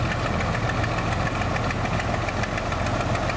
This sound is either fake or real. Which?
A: real